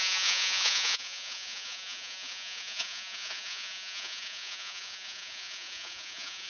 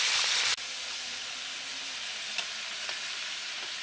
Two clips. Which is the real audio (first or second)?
second